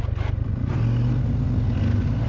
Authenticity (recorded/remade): recorded